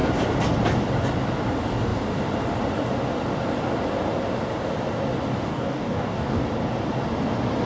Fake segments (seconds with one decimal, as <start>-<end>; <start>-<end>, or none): 5.5-6.4